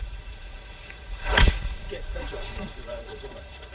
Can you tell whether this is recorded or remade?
remade